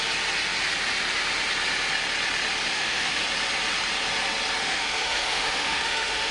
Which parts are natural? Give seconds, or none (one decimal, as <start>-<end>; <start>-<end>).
0.0-2.7; 3.2-4.6